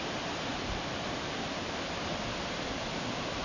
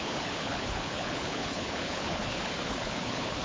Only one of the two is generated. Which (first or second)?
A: second